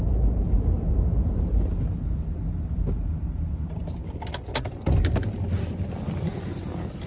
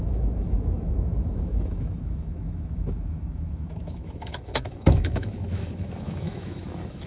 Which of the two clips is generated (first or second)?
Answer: second